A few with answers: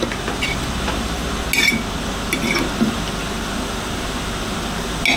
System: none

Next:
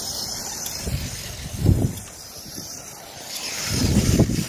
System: none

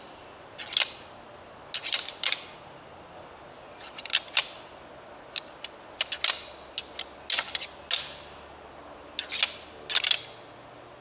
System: none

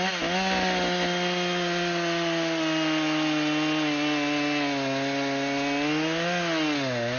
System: none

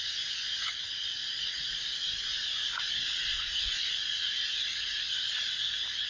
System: none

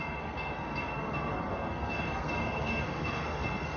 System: codec, SNAC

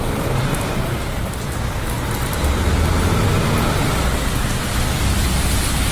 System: none